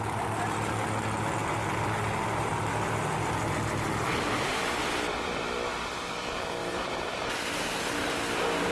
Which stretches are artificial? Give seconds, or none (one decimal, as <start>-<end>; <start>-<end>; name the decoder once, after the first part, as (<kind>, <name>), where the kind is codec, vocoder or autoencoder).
6.6-7.8 (vocoder, BigVGAN v2)